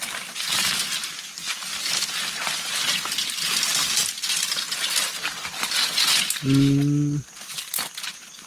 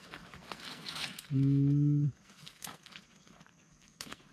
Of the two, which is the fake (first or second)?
second